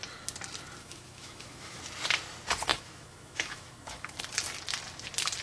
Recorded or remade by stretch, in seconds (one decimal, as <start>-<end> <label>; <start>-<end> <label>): 0.0-0.8 recorded; 0.8-1.8 remade; 1.8-2.7 recorded; 2.7-4.2 remade; 4.2-5.4 recorded